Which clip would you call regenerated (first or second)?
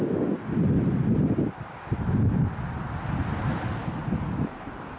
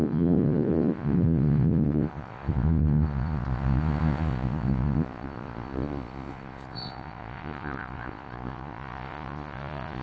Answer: second